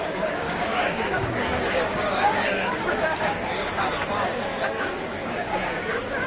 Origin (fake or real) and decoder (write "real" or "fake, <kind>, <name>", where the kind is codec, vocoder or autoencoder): fake, codec, DAC